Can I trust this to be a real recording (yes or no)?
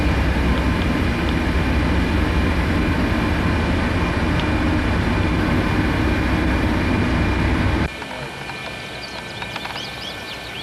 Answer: yes